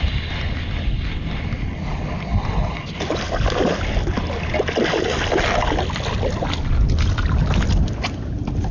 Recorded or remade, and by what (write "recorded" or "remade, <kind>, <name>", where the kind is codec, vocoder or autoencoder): recorded